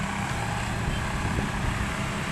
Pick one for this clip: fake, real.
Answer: real